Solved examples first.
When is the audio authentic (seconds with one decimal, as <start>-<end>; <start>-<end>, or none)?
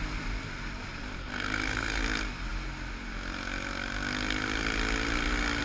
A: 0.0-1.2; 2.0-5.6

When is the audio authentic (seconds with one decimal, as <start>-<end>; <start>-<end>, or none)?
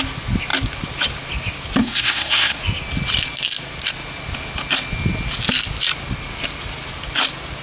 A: 0.0-1.8; 2.6-7.6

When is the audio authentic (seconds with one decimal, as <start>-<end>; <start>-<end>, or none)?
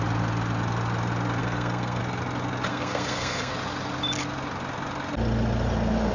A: 0.0-1.4; 2.0-2.7; 3.5-6.1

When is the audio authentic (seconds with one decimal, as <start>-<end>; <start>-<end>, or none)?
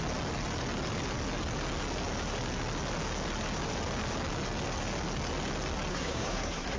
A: 0.0-5.9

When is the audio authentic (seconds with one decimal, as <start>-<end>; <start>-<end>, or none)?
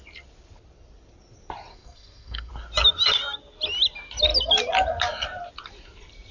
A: 0.0-1.7; 2.5-6.3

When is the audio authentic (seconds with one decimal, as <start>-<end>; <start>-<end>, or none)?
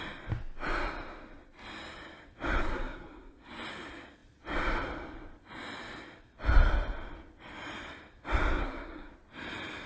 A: 0.0-2.6; 3.5-8.6; 9.1-9.9